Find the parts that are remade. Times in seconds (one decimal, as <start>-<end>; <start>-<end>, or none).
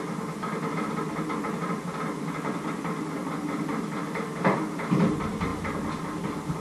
none